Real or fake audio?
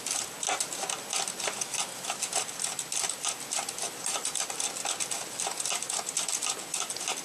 real